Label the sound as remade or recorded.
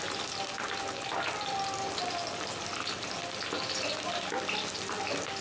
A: recorded